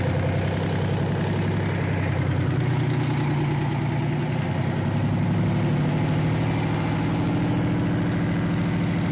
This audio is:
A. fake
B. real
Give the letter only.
B